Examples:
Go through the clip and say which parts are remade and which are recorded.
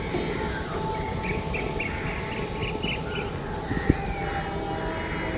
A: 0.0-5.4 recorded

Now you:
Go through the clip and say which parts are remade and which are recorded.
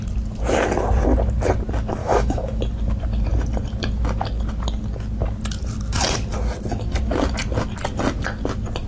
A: 0.0-2.0 recorded; 2.0-2.6 remade; 2.6-8.9 recorded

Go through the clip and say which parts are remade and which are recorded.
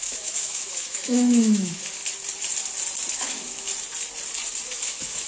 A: 0.0-2.0 remade; 2.0-3.1 recorded; 3.1-3.7 remade; 3.7-4.7 recorded; 4.7-5.3 remade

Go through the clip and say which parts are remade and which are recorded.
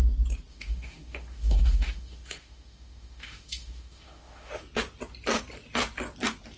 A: 0.0-0.5 recorded; 0.5-4.5 remade; 4.5-6.6 recorded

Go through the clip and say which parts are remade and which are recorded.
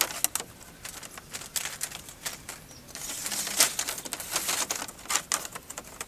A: 0.0-6.1 recorded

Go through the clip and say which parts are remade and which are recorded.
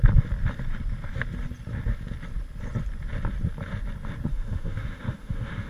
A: 0.0-4.3 recorded; 4.3-5.7 remade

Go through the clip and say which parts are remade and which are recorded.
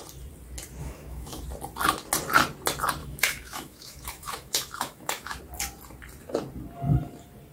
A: 0.0-0.8 recorded; 0.8-1.4 remade; 1.4-3.0 recorded; 3.0-5.4 remade; 5.4-7.5 recorded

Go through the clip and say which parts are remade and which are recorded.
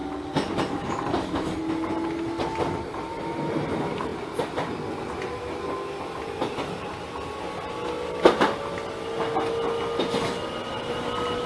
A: 0.0-11.5 recorded